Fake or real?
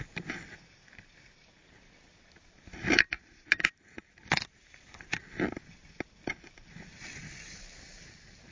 real